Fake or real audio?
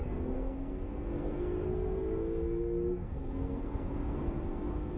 fake